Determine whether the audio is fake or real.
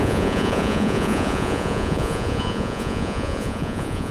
fake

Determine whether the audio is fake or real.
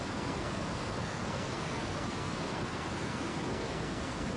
fake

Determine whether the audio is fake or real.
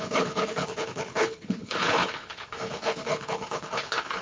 fake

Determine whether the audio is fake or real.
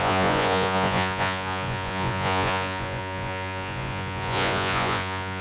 fake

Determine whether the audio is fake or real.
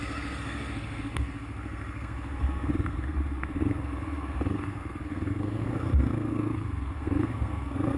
fake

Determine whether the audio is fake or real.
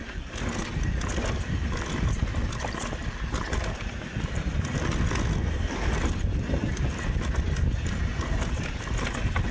real